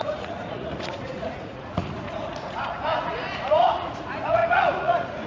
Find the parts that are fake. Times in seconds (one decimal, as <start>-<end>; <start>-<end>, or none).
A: 0.0-5.3